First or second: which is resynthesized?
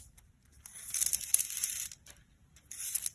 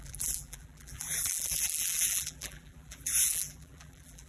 second